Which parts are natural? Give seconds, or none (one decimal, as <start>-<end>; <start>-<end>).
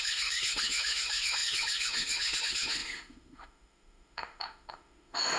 none